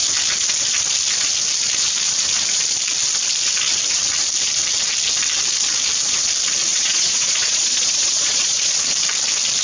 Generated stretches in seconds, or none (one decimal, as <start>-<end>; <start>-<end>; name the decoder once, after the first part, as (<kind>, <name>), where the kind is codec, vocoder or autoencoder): 6.7-8.7 (vocoder, Vocos)